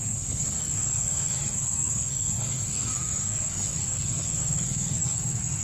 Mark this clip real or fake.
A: fake